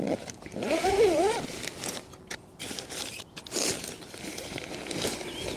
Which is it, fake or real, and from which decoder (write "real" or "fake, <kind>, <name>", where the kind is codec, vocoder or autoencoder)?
real